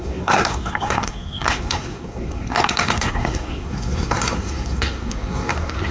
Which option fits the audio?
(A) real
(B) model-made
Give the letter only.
B